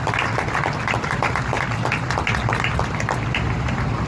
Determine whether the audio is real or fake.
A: real